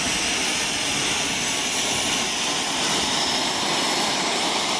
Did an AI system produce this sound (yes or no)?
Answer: no